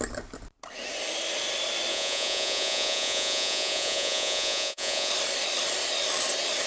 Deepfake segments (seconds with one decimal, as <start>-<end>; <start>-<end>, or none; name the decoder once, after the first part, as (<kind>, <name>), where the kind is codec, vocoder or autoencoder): 1.9-5.1 (vocoder, Vocos)